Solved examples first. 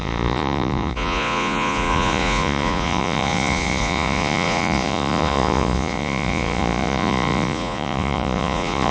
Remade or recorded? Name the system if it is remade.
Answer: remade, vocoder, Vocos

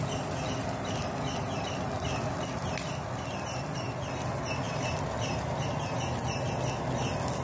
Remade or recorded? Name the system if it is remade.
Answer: recorded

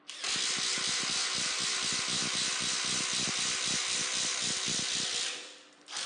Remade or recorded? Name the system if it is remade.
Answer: recorded